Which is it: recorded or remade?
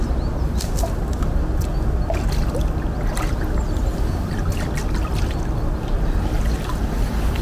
recorded